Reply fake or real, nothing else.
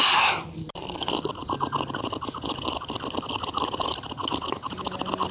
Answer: real